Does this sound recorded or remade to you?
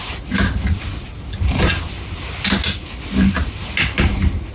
recorded